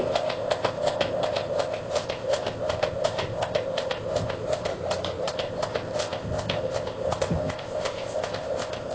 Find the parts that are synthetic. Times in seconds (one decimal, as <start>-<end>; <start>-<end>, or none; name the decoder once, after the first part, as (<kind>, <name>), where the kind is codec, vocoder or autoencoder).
0.0-4.7 (codec, ZipCodec); 5.3-8.9